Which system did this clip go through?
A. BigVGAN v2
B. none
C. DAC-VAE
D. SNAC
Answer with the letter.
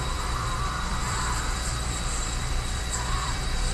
A